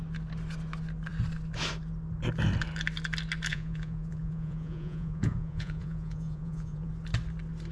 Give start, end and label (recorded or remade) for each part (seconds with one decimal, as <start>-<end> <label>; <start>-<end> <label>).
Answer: 0.0-3.5 recorded; 3.5-6.9 remade; 6.9-7.7 recorded